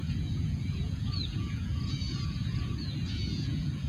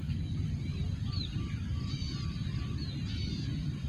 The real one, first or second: second